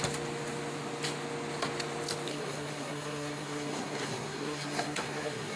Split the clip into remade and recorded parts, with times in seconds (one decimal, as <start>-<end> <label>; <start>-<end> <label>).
0.0-2.3 recorded; 2.3-5.6 remade